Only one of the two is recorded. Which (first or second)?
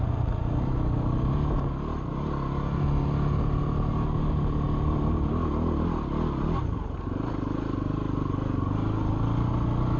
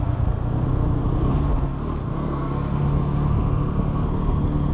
first